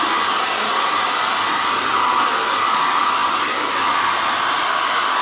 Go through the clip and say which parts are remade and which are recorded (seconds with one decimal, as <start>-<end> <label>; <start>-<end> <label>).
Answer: 0.0-5.2 recorded